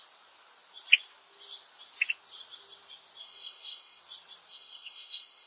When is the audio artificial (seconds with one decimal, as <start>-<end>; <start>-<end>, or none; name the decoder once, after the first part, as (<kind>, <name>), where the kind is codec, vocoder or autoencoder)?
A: 3.2-4.0 (codec, SNAC); 4.5-5.5